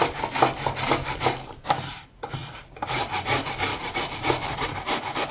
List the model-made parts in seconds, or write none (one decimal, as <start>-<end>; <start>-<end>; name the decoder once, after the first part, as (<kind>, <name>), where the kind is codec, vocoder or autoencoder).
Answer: 2.4-3.2 (vocoder, BigVGAN v2); 3.7-4.2